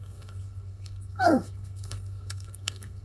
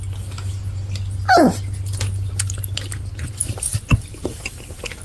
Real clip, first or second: second